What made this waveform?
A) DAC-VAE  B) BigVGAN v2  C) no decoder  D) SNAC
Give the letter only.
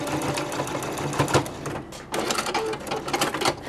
C